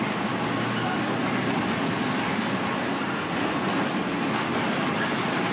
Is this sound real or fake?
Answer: real